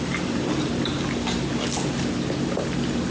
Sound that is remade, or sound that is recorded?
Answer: recorded